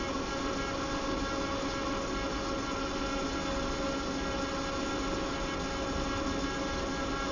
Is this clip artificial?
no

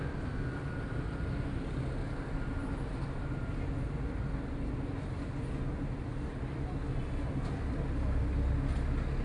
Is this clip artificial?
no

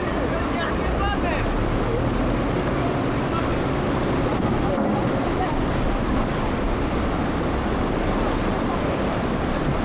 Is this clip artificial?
no